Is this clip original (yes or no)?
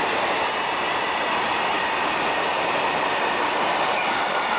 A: yes